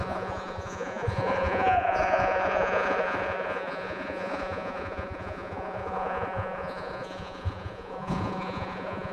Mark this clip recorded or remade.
remade